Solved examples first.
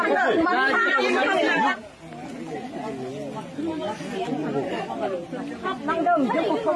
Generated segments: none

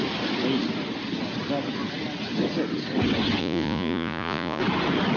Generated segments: 3.4-4.6 (vocoder, Vocos)

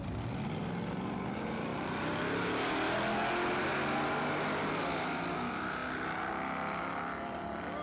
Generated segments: none

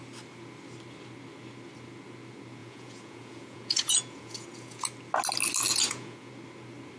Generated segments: 2.6-4.8 (vocoder, Vocos); 5.7-6.3

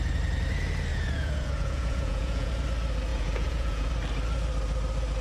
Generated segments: 0.9-2.5 (vocoder, Vocos); 3.1-3.9

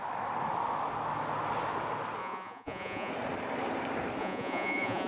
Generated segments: 2.2-3.1 (vocoder, Vocos); 4.2-5.1

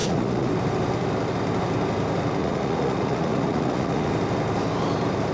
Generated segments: 0.0-0.5 (vocoder, Vocos); 2.4-4.1

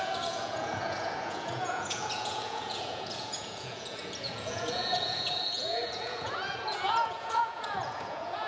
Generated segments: 0.0-8.5 (vocoder, Vocos)